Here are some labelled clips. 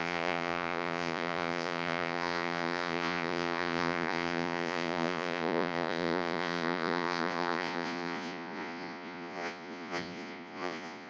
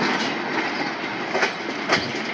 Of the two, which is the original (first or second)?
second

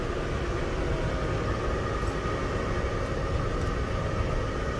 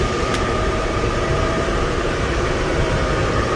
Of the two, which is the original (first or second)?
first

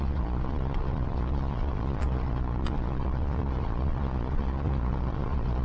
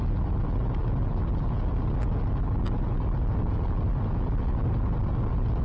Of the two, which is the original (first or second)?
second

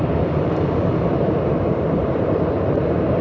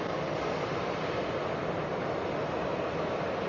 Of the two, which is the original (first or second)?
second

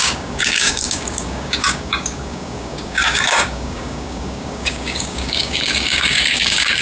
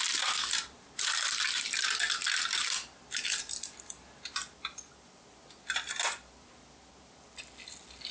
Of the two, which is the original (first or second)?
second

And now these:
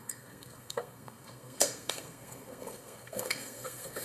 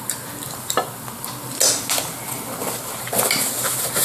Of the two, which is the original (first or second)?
second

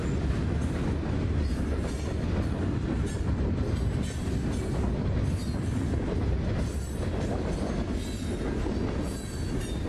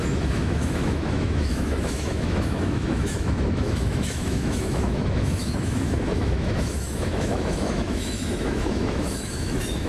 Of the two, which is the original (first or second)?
first